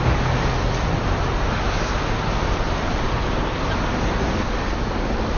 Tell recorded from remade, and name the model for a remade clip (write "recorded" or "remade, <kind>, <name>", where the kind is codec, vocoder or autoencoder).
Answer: recorded